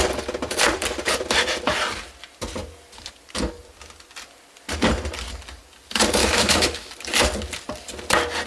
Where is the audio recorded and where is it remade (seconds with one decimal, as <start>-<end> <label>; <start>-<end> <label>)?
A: 0.0-6.2 recorded; 6.2-6.9 remade; 6.9-8.5 recorded